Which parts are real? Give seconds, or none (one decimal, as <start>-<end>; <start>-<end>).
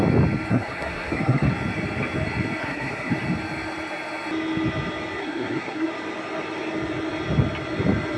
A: 0.0-0.5; 1.5-2.6; 3.1-5.2; 5.9-8.2